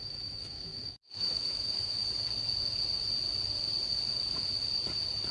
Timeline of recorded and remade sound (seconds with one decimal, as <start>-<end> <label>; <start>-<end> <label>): 0.0-2.0 remade; 2.0-5.3 recorded